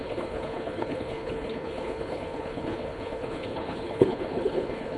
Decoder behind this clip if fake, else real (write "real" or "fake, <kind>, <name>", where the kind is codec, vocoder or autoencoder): fake, codec, HILCodec